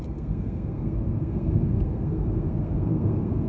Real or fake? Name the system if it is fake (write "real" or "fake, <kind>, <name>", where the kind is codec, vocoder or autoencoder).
fake, codec, SNAC